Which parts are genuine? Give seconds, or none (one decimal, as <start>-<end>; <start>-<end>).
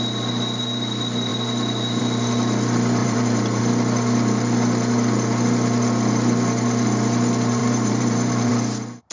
0.0-3.0; 3.6-7.6; 8.5-9.1